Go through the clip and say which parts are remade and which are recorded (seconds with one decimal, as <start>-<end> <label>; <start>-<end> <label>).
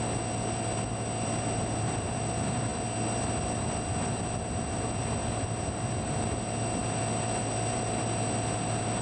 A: 0.0-9.0 recorded